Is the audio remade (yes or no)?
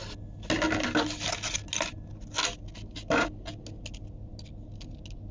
no